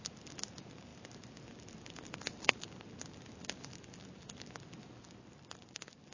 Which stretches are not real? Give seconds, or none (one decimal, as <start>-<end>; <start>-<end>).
none